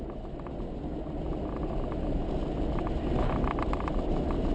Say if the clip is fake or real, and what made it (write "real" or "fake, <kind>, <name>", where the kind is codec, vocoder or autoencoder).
real